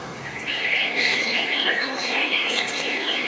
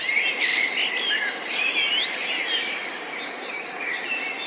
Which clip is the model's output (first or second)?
first